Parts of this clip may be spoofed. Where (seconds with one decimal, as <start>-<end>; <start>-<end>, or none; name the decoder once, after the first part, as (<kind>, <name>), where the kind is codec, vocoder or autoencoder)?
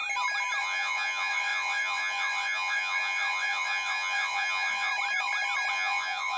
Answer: 0.6-4.9 (vocoder, Vocos); 5.7-6.4